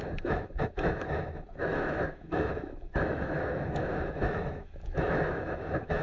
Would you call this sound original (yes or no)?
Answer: no